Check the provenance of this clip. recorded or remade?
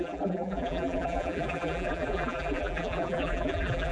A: remade